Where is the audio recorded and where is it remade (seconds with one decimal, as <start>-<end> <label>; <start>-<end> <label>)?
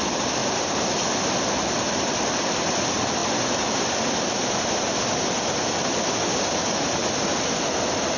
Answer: 0.0-8.2 recorded